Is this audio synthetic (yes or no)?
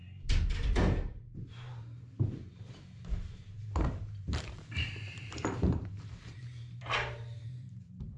yes